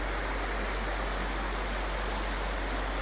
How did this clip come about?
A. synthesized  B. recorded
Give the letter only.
B